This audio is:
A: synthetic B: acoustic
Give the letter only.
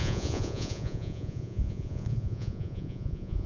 A